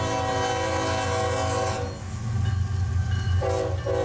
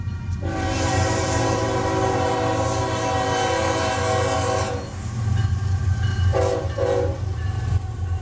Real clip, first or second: first